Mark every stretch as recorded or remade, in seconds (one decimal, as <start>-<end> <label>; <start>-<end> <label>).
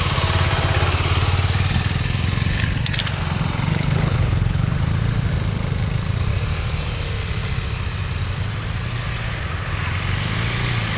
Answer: 0.0-3.7 recorded; 3.7-4.7 remade; 4.7-11.0 recorded